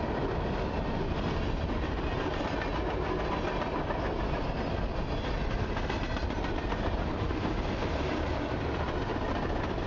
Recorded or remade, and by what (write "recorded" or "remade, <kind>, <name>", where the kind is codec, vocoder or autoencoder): recorded